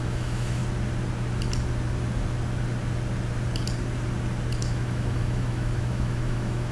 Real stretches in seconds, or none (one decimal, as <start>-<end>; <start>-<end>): 0.6-4.6

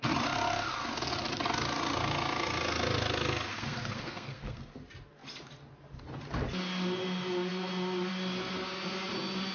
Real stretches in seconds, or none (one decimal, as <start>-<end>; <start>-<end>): 0.0-3.5; 4.7-9.5